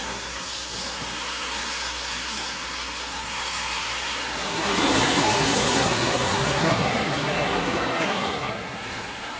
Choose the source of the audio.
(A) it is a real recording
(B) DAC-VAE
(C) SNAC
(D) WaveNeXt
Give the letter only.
C